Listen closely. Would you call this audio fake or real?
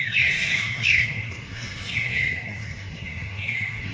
fake